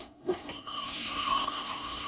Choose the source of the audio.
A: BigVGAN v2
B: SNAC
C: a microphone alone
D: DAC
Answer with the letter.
B